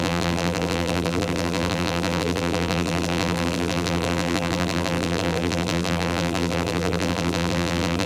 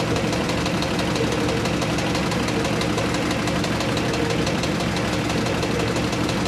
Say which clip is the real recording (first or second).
second